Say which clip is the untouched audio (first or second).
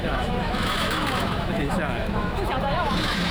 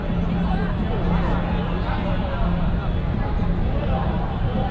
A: second